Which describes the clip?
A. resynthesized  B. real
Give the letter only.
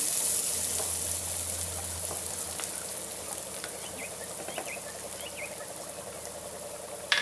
B